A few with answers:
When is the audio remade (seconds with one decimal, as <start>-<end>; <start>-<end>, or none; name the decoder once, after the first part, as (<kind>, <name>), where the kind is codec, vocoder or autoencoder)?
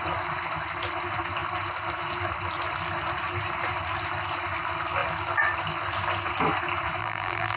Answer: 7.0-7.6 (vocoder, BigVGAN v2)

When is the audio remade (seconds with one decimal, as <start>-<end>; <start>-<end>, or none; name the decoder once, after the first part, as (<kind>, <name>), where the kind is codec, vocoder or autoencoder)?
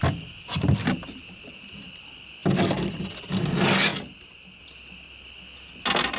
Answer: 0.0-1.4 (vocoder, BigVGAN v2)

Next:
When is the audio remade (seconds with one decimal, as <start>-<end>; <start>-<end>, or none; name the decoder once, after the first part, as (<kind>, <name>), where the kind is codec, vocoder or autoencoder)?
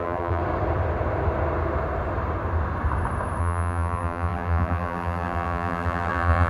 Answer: 0.0-0.4 (vocoder, BigVGAN v2); 3.4-6.5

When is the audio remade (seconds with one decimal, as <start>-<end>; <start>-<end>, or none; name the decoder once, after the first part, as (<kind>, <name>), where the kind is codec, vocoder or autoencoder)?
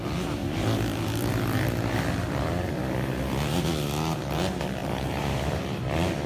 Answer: 4.8-5.6 (vocoder, BigVGAN v2)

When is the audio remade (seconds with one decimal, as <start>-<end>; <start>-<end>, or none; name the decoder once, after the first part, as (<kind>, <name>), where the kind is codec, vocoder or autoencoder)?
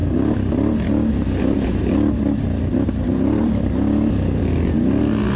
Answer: 0.0-1.1 (vocoder, BigVGAN v2); 1.8-5.0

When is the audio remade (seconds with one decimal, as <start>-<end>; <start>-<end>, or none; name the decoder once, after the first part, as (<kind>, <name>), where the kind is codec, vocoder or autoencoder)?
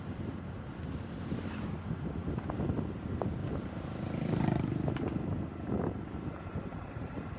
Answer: 3.4-7.4 (vocoder, BigVGAN v2)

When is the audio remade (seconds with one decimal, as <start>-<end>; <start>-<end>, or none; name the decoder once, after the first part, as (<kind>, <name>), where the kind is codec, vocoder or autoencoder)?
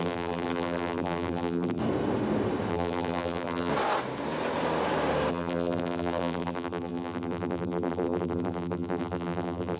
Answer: 0.0-1.8 (vocoder, BigVGAN v2); 2.7-3.7; 5.3-9.8